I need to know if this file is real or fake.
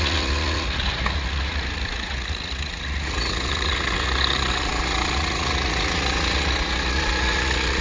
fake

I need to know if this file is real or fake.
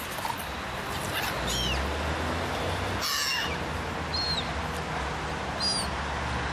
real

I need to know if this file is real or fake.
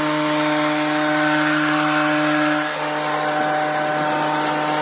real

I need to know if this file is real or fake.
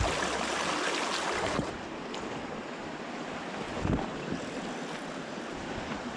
real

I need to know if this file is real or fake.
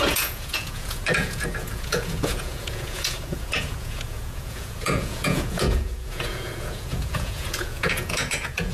fake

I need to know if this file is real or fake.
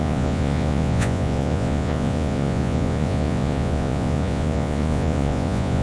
fake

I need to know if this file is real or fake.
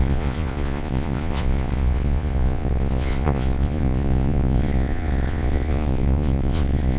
fake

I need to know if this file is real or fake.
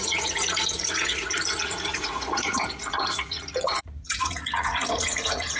fake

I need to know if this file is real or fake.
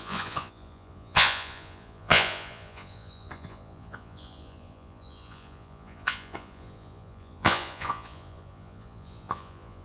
fake